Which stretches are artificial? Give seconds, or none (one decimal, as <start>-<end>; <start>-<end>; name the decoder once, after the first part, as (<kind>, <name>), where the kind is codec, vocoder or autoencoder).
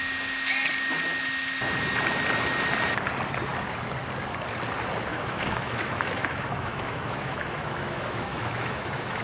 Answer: 5.1-9.2 (autoencoder, DAC-VAE)